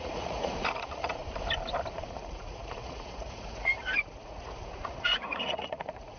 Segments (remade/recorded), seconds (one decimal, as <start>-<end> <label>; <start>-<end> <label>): 0.0-1.2 remade; 1.2-1.9 recorded; 1.9-6.2 remade